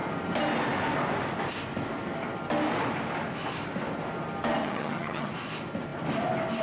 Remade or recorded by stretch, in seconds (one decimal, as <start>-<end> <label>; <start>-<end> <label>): 0.0-4.6 recorded; 4.6-5.3 remade; 5.3-6.6 recorded